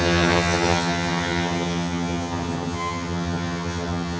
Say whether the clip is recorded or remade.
remade